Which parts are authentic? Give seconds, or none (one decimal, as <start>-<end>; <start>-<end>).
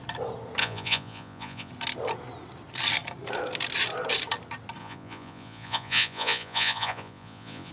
0.0-0.6; 1.7-4.8